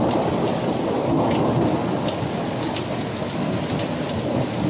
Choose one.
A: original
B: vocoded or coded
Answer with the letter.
A